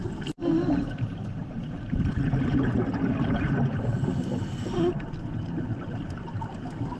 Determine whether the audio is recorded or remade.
recorded